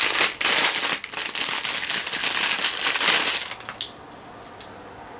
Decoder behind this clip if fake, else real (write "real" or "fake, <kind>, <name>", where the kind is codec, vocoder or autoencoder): real